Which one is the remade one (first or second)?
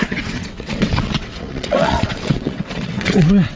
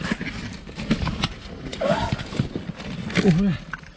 first